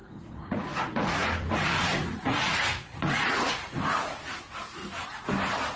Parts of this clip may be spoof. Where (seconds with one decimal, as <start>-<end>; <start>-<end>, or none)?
0.0-4.8